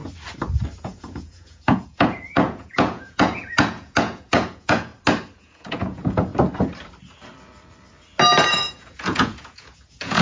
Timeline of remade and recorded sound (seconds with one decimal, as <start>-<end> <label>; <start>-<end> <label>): 0.0-0.8 recorded; 0.8-4.9 remade; 4.9-5.4 recorded; 5.4-6.3 remade; 6.3-8.5 recorded; 8.5-10.2 remade